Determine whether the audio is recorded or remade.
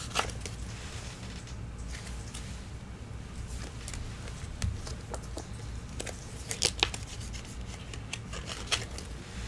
recorded